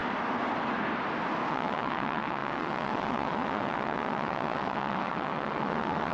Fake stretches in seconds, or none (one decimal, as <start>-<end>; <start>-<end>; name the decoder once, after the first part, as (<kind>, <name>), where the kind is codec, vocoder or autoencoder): 1.5-6.1 (vocoder, WaveNeXt)